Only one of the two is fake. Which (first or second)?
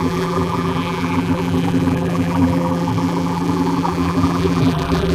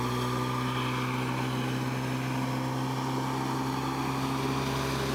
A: first